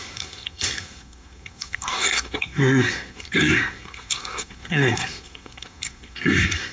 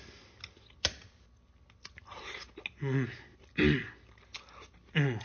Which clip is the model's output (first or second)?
first